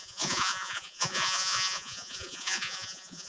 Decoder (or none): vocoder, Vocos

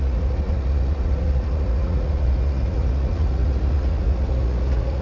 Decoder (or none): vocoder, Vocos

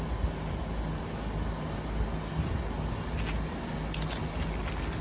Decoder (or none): none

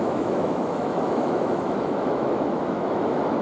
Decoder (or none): autoencoder, DAC-VAE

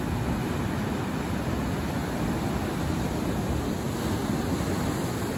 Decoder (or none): none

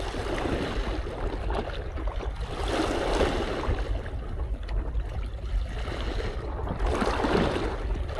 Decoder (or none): none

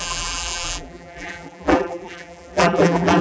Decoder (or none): vocoder, BigVGAN v2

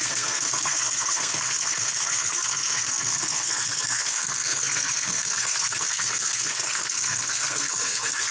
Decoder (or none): codec, SNAC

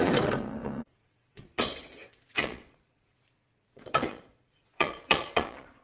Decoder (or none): vocoder, Vocos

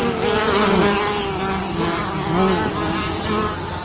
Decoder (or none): none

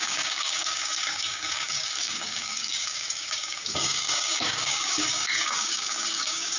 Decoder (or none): codec, DAC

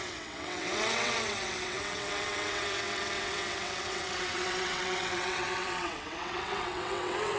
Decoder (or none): vocoder, WaveNeXt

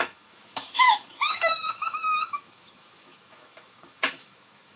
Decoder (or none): autoencoder, DAC-VAE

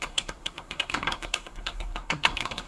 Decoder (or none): codec, SNAC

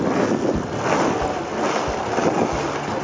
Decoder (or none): none